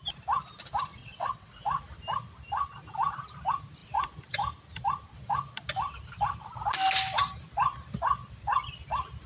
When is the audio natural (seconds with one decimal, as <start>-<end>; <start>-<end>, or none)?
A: 0.0-1.0; 1.8-9.3